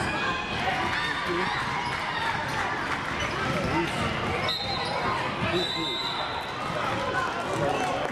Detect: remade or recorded recorded